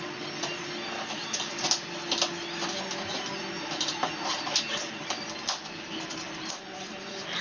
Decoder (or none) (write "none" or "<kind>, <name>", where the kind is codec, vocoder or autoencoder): none